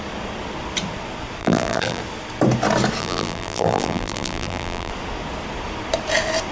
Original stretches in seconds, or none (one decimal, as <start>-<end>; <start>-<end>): 0.0-1.4; 2.0-3.0; 4.9-6.5